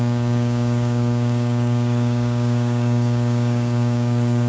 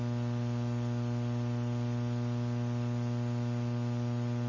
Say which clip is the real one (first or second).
second